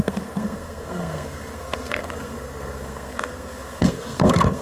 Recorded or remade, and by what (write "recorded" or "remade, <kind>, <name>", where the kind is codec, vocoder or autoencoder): remade, codec, SNAC